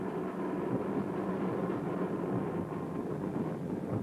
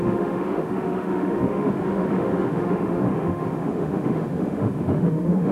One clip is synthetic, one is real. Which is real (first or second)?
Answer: first